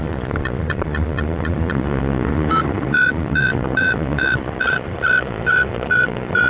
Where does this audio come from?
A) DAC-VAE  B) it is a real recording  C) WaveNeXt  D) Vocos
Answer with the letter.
D